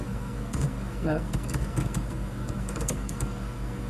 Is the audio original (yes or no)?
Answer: no